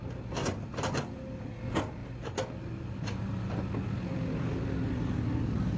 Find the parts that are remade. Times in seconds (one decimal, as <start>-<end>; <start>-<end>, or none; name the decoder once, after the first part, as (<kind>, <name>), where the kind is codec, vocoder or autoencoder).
0.4-1.5 (vocoder, BigVGAN v2); 2.0-3.6